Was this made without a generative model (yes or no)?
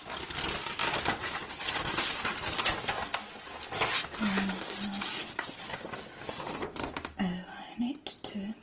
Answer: yes